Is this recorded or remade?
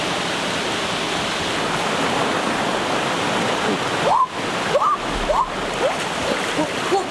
recorded